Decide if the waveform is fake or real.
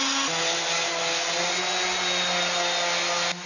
real